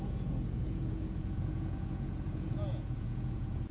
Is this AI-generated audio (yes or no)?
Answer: yes